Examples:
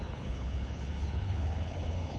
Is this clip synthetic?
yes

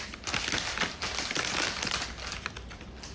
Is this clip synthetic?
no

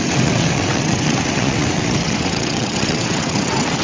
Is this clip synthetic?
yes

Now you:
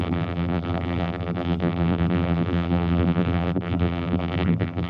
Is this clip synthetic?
yes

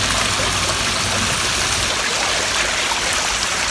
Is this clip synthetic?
no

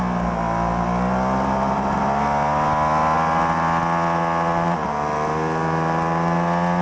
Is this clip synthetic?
no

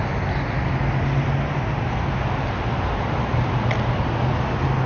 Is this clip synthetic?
no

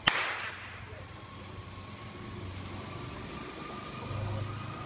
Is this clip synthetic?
no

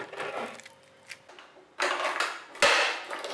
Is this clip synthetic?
no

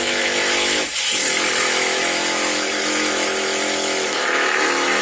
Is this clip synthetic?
yes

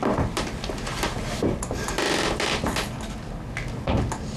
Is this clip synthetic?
no